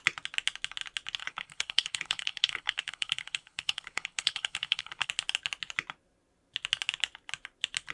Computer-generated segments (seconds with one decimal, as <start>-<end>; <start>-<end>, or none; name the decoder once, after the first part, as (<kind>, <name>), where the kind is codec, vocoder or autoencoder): 1.2-5.1 (codec, HILCodec)

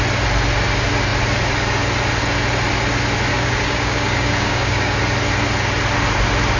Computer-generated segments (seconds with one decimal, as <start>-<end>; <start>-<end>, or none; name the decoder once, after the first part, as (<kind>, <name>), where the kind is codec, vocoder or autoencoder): 3.3-5.0 (codec, DAC)

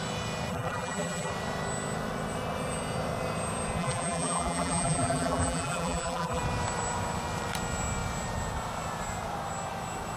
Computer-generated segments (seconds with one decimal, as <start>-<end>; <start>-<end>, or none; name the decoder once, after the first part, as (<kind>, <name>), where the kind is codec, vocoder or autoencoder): 0.5-1.3 (vocoder, BigVGAN v2); 3.8-6.4

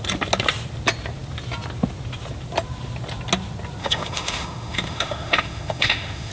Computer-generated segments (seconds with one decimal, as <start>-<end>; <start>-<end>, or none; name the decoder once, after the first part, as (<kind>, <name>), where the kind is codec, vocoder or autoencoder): 3.8-6.3 (autoencoder, DAC-VAE)

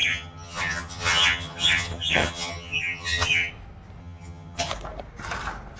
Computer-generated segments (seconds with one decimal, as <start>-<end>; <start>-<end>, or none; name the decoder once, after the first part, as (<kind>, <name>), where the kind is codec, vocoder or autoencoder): 0.0-3.5 (vocoder, HiFi-GAN); 4.0-4.7

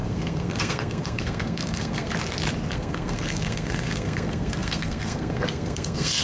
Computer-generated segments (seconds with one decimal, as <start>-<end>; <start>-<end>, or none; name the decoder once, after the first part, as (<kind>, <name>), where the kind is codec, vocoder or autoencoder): 0.0-2.1 (codec, SNAC); 2.7-6.2

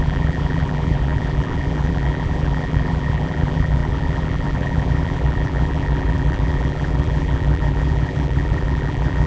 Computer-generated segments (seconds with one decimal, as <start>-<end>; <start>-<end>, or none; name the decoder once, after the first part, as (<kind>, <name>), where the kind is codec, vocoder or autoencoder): 0.0-9.3 (vocoder, BigVGAN v2)

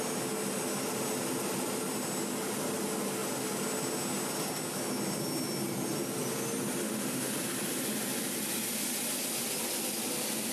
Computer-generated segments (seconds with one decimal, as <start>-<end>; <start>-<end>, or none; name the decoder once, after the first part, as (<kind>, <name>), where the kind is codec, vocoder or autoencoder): 6.8-7.3 (autoencoder, DAC-VAE)